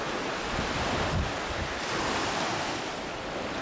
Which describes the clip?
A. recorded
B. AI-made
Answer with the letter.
A